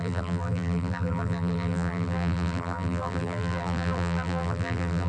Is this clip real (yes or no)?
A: no